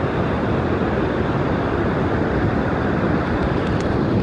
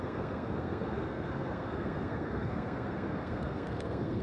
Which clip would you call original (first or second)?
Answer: first